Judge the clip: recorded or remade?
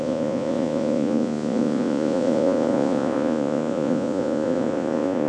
remade